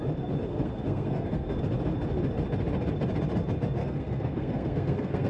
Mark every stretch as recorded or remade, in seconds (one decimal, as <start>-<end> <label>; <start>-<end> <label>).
0.0-0.5 recorded; 0.5-1.6 remade; 1.6-3.8 recorded; 3.8-5.3 remade